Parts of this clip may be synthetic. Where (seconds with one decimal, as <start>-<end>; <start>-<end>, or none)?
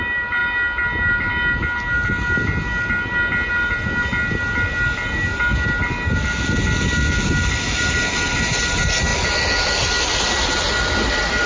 none